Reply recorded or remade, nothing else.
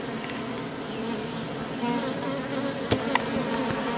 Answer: recorded